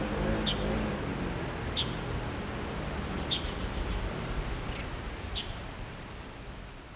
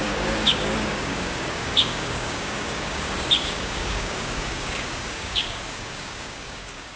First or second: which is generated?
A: second